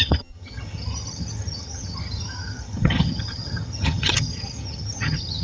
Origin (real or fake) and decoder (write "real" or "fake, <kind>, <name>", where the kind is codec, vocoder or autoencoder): fake, vocoder, HiFi-GAN